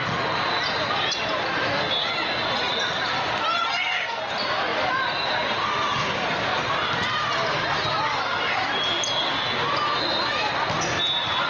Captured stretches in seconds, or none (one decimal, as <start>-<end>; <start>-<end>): 0.0-3.6; 4.2-11.5